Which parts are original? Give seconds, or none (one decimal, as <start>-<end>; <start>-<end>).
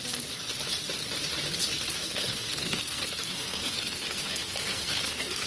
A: 0.0-2.0